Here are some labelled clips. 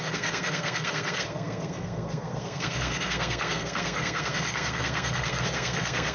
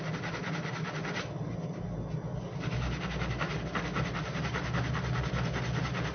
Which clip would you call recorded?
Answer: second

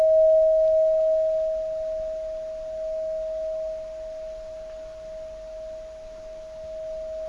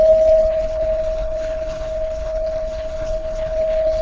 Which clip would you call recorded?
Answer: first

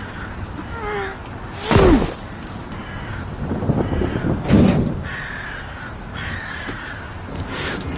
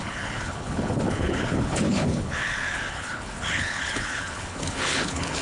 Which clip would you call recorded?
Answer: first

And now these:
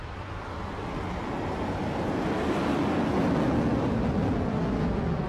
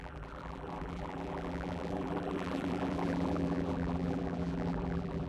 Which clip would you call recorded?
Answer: first